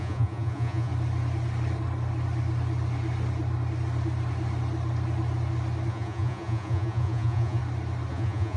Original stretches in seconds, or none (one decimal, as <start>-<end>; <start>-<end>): 0.9-5.9; 7.6-8.1